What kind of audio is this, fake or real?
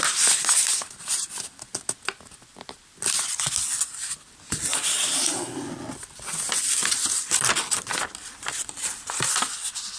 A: real